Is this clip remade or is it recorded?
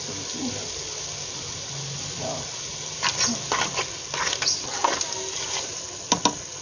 recorded